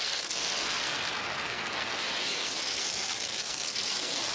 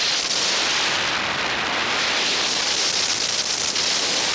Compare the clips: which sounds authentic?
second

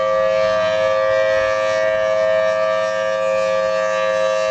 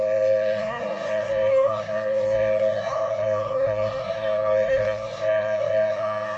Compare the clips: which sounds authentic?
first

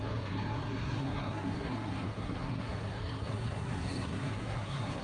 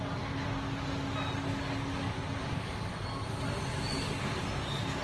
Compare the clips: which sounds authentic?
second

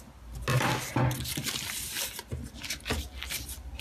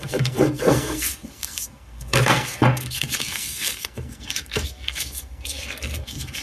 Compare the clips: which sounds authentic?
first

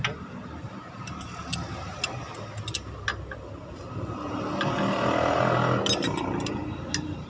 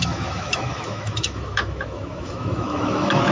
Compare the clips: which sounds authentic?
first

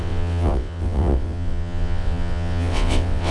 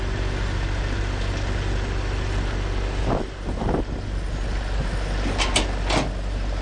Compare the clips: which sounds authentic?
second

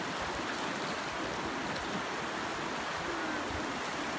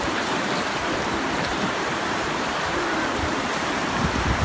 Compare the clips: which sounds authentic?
first